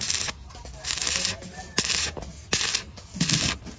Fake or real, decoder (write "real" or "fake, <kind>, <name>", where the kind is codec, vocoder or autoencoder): real